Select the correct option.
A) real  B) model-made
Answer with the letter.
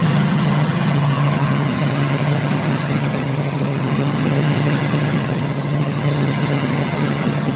B